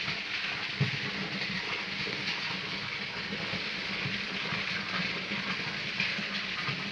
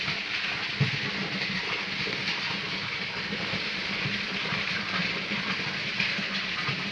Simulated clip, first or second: second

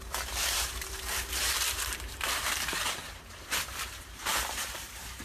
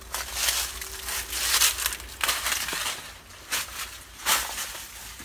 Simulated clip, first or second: first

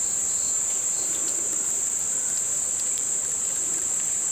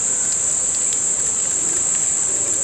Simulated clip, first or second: first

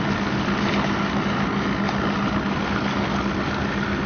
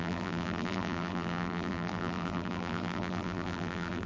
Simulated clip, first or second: second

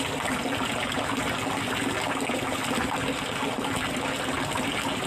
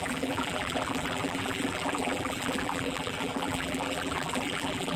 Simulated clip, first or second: second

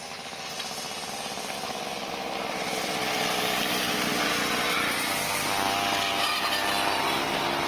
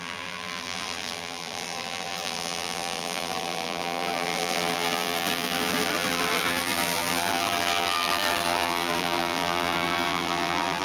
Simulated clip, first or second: second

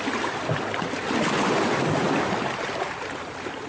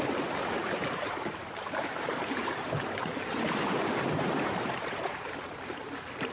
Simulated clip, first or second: second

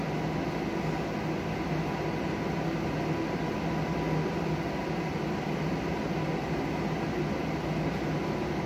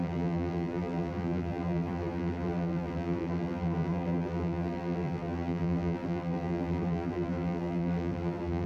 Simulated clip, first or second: second